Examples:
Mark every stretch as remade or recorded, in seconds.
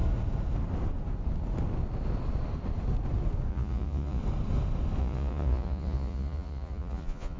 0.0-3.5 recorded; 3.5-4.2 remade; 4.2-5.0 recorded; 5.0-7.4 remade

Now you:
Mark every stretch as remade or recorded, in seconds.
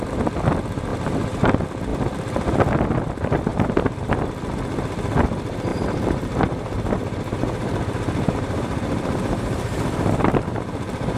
0.0-0.9 recorded; 0.9-1.5 remade; 1.5-3.5 recorded; 3.5-4.3 remade; 4.3-5.7 recorded; 5.7-11.2 remade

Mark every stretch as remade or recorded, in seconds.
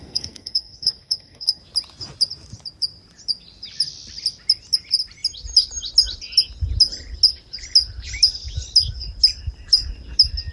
0.0-1.6 remade; 1.6-10.5 recorded